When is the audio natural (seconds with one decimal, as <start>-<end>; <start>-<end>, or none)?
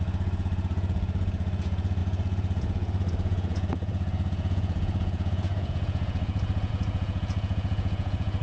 none